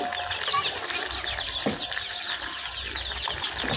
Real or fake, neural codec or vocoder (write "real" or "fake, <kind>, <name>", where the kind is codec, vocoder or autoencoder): real